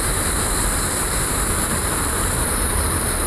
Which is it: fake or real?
fake